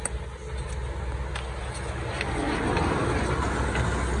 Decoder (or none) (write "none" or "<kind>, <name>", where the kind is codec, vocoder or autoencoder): none